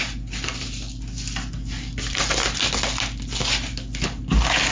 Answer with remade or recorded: recorded